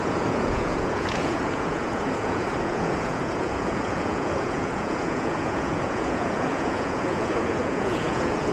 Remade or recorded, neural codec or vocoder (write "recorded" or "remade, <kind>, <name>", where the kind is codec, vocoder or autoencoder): remade, vocoder, Vocos